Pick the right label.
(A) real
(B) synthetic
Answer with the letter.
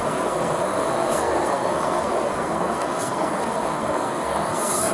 B